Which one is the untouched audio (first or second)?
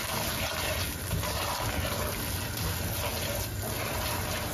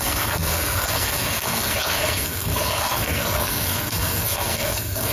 first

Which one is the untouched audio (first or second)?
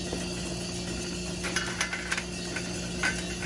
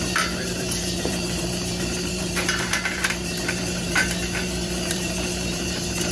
first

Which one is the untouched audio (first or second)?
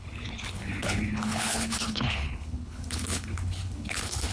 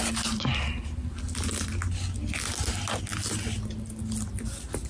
second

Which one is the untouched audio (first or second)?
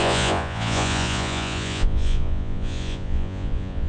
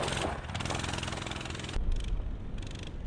second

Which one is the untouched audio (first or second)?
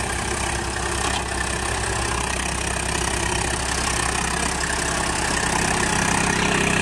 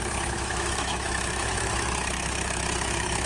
first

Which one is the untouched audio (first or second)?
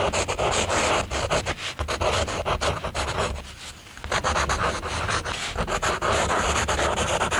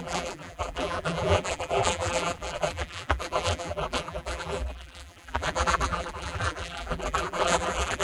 first